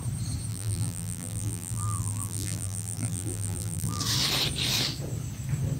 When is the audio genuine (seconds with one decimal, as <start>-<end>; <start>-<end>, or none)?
0.0-0.5; 4.0-5.8